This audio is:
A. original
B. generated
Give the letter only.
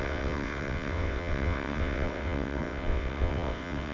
B